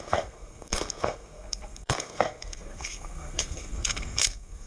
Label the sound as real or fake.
fake